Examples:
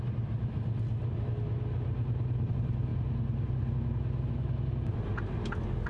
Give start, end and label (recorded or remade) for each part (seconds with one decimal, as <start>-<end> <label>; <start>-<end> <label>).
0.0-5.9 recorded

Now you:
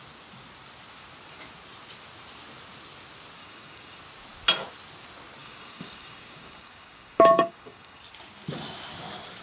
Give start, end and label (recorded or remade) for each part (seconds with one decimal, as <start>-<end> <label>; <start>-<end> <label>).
0.0-3.4 recorded; 3.4-4.0 remade; 4.0-5.4 recorded; 5.4-8.0 remade; 8.0-9.4 recorded

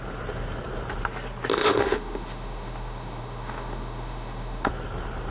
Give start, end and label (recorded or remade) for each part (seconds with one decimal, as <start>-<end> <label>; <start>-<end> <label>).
0.0-1.5 recorded; 1.5-4.7 remade; 4.7-5.3 recorded

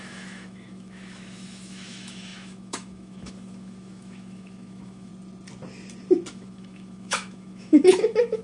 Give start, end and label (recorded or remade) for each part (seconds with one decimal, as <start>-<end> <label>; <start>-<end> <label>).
0.0-5.1 remade; 5.1-6.3 recorded; 6.3-8.4 remade

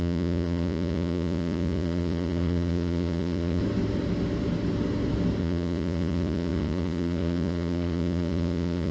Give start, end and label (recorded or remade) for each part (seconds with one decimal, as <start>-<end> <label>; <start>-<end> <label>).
0.0-3.6 remade; 3.6-5.4 recorded; 5.4-8.9 remade

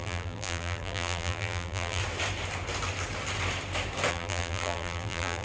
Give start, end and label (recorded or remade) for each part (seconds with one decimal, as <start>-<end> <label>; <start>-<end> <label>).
0.0-2.0 remade; 2.0-4.1 recorded; 4.1-5.4 remade

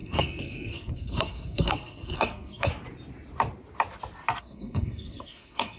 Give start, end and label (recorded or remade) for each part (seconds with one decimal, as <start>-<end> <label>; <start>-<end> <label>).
0.0-2.7 remade; 2.7-4.4 recorded; 4.4-5.8 remade

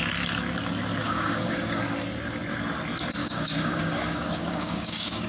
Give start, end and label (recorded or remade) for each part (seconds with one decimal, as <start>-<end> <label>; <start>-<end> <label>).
0.0-1.0 recorded; 1.0-1.8 remade; 1.8-3.2 recorded; 3.2-5.3 remade